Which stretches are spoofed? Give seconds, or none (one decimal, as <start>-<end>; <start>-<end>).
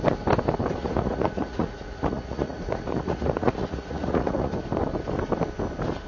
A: 0.8-4.5